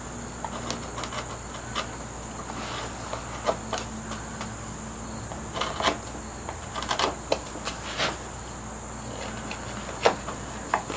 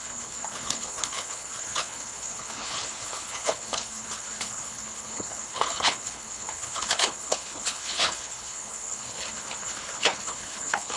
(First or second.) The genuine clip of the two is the first